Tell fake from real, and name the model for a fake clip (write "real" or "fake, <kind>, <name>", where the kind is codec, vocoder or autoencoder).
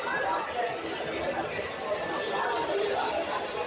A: real